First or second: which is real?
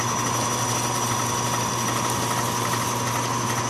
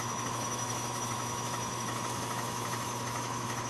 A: first